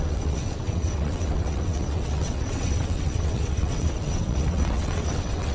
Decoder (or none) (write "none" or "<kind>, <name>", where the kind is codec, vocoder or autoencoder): vocoder, WaveNeXt